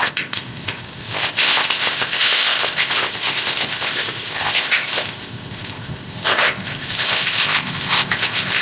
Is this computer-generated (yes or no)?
yes